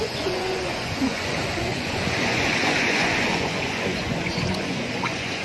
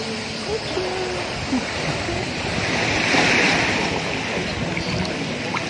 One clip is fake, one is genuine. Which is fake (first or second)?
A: first